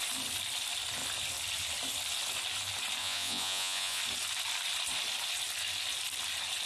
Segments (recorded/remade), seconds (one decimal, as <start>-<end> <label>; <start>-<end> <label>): 0.0-3.0 recorded; 3.0-4.0 remade; 4.0-6.7 recorded